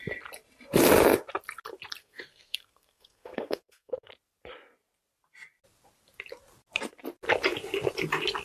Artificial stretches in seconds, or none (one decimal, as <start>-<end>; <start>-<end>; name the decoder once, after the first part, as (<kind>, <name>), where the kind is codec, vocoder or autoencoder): 2.0-4.1 (codec, SNAC)